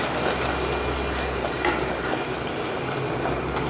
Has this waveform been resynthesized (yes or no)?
no